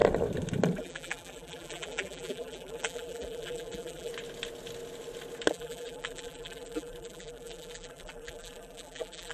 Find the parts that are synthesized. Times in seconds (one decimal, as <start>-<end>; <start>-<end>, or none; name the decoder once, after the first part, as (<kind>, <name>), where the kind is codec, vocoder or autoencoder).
0.8-4.1 (vocoder, BigVGAN v2); 5.5-9.3